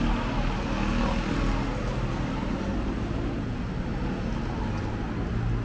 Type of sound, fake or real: real